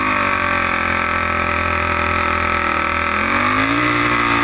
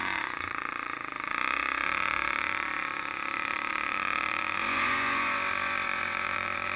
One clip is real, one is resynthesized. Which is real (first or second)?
first